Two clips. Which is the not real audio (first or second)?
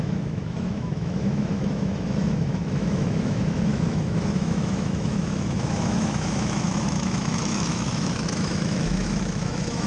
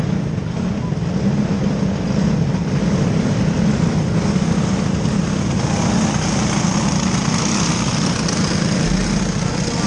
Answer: first